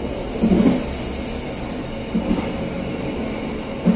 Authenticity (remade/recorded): recorded